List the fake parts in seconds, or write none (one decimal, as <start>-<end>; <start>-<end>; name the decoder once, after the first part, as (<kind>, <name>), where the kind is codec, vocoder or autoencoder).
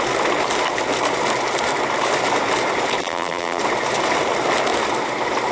3.0-3.6 (vocoder, BigVGAN v2)